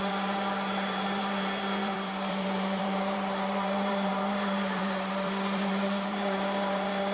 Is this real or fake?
fake